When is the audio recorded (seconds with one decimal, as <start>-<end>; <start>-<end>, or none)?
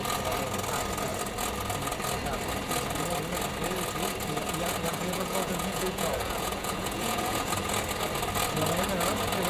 0.0-4.9; 7.7-9.5